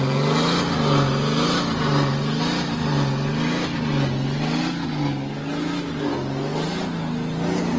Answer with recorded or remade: recorded